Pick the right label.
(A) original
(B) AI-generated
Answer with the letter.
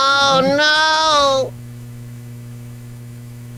B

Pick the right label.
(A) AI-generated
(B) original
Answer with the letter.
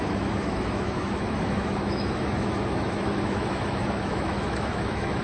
A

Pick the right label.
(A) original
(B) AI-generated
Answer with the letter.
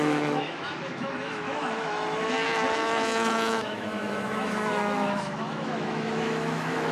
B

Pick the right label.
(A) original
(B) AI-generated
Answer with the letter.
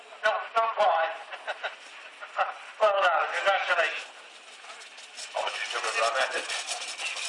A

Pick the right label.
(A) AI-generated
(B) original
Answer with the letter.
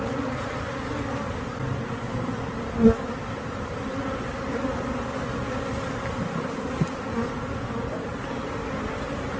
B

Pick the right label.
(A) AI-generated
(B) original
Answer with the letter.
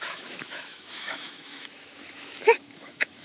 A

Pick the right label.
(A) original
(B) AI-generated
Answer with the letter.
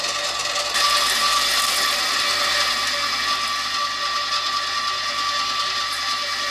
A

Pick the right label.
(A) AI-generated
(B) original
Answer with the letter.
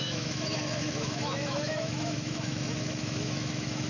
A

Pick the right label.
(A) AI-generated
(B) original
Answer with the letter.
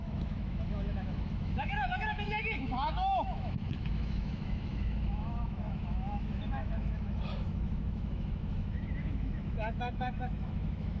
A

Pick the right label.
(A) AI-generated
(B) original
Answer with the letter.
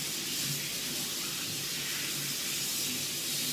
B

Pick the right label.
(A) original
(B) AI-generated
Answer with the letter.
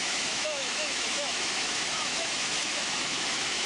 B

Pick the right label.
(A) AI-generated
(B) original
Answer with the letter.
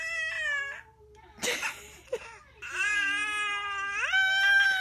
B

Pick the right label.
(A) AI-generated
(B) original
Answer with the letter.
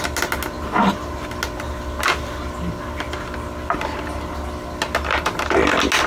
B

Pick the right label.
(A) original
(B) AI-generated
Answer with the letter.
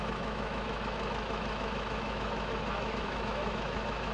B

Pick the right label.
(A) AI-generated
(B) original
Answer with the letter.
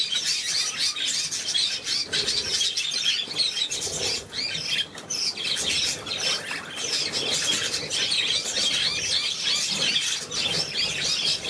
B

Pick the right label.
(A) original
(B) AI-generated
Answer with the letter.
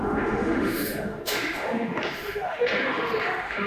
B